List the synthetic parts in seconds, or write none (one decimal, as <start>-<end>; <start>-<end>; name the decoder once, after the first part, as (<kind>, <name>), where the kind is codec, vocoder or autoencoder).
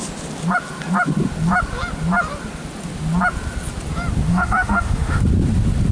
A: 4.3-5.2 (autoencoder, DAC-VAE)